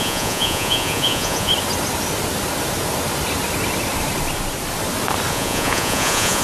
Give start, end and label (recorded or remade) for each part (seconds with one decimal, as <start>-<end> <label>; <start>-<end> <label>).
0.0-1.5 remade; 1.5-5.3 recorded; 5.3-6.4 remade